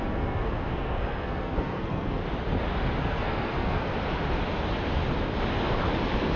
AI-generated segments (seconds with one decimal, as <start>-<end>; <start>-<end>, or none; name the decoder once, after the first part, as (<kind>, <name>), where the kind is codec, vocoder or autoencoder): 0.0-2.2 (codec, SNAC); 3.0-3.9